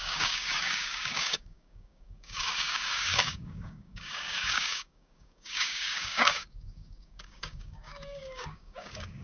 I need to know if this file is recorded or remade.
remade